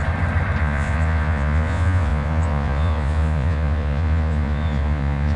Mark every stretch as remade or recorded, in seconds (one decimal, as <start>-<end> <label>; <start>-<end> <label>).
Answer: 0.0-0.6 recorded; 0.6-5.4 remade